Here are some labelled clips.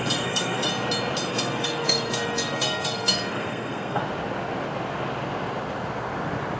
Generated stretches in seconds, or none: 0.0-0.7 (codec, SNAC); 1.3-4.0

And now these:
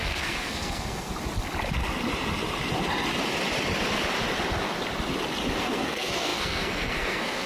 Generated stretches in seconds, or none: 0.0-1.1 (codec, SNAC); 5.6-7.5

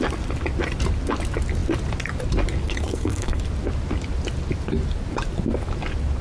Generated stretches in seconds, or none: 2.6-3.4 (codec, SNAC)

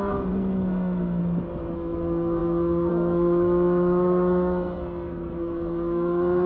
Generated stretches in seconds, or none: 0.0-1.2 (codec, SNAC); 1.7-6.5

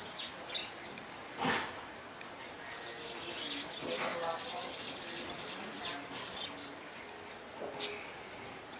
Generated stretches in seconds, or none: none

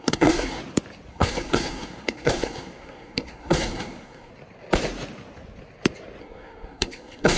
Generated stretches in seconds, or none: 0.0-0.6 (codec, SNAC); 1.1-4.3; 6.2-7.4

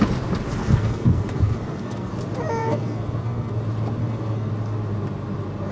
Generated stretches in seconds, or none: 0.6-2.1 (codec, SNAC); 2.6-3.6; 4.0-4.5

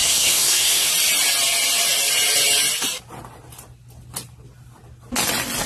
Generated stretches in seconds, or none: 0.0-0.9 (codec, SNAC)